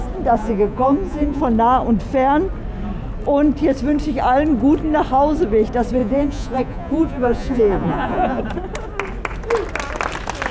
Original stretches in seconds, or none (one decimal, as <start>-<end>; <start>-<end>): 0.0-0.4; 1.4-6.0; 8.4-10.5